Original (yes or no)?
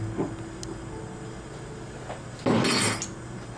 yes